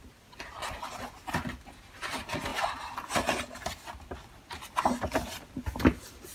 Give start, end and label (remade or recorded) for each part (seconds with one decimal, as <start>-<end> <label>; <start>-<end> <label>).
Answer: 0.0-6.3 recorded